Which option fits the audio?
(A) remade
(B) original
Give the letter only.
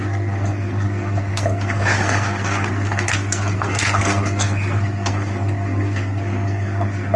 A